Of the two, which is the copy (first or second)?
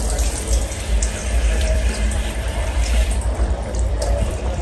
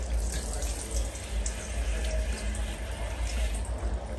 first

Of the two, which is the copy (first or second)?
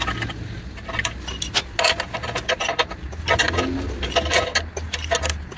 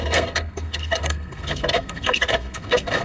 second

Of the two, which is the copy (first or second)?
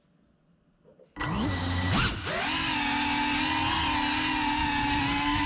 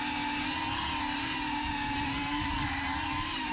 second